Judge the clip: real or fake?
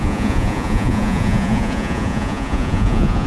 fake